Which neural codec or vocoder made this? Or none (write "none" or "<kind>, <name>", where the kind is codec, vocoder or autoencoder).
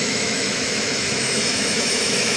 autoencoder, DAC-VAE